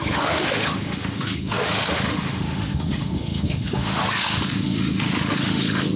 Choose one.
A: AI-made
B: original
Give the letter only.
A